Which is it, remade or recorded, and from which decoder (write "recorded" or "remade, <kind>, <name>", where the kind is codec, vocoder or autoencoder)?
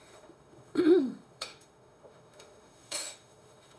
remade, autoencoder, DAC-VAE